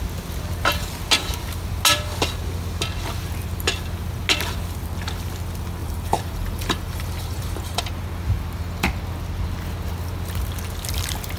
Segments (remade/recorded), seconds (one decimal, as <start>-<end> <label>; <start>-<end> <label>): 0.0-5.8 recorded; 5.8-7.8 remade; 7.8-11.4 recorded